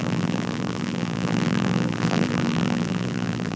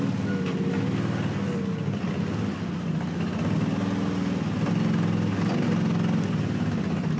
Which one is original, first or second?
second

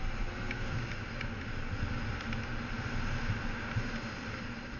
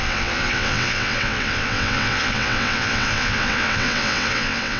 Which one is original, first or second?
first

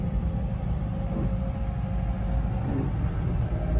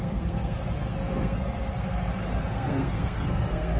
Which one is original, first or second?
first